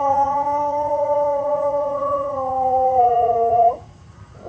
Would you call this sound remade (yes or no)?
yes